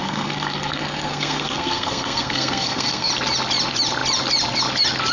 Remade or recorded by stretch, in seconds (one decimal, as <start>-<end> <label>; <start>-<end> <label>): 0.0-3.1 remade; 3.1-5.1 recorded